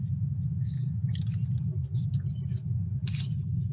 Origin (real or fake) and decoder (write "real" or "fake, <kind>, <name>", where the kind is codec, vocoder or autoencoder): real